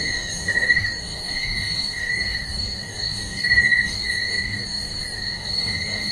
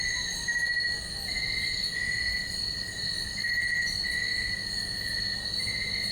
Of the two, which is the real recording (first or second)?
second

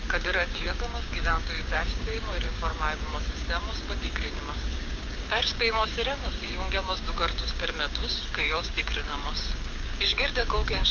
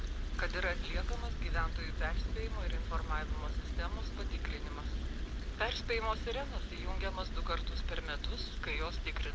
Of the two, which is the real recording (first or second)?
second